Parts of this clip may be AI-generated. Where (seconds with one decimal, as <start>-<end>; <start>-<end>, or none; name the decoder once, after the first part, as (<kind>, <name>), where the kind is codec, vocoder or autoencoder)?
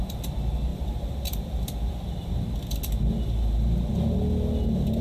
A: 0.7-2.0 (vocoder, BigVGAN v2)